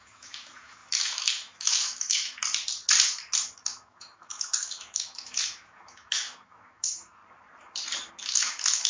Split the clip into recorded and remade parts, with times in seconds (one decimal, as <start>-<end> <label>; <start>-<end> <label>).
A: 0.0-2.4 remade; 2.4-3.6 recorded; 3.6-7.2 remade; 7.2-8.1 recorded; 8.1-8.9 remade